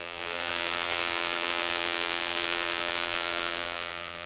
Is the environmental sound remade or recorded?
remade